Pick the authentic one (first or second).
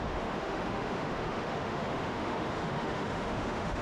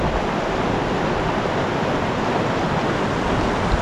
second